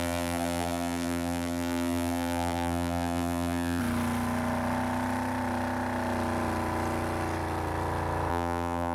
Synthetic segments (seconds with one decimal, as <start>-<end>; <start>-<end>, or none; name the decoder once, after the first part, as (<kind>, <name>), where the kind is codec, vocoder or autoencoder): 0.0-3.8 (vocoder, BigVGAN v2); 8.3-8.9